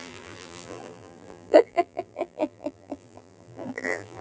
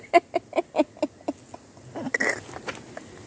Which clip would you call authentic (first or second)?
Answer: second